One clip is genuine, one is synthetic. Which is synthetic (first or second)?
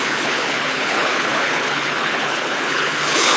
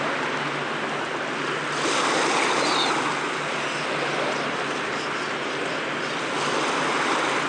first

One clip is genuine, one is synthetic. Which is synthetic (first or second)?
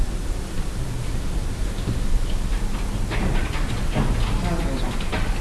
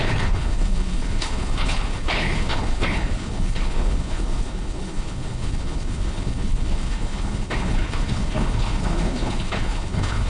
second